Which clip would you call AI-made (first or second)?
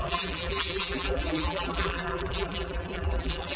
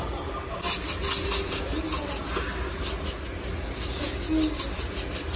first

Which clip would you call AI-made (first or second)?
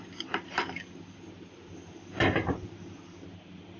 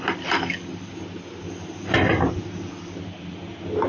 first